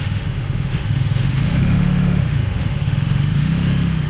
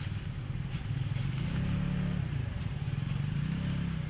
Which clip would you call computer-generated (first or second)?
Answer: first